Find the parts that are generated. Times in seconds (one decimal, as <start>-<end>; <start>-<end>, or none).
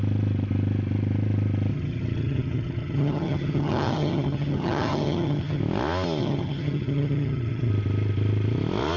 1.7-5.6; 6.2-7.7